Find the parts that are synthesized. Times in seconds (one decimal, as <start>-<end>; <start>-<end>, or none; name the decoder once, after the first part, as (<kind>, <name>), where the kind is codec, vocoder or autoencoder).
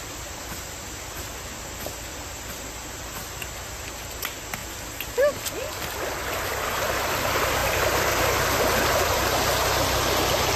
7.6-9.2 (vocoder, BigVGAN v2)